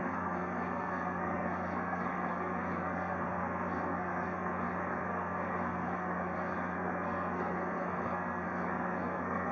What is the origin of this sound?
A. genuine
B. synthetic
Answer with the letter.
B